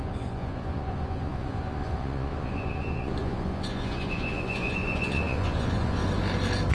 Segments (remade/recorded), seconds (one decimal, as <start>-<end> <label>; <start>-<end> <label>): 0.0-6.0 remade; 6.0-6.7 recorded